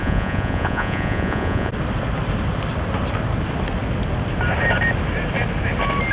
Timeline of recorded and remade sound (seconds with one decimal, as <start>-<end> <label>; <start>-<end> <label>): 0.0-1.7 remade; 1.7-6.1 recorded